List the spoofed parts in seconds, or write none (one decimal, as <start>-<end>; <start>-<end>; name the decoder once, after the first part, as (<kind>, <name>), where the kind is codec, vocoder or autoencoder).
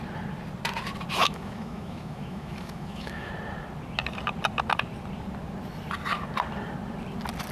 1.2-3.3 (autoencoder, DAC-VAE)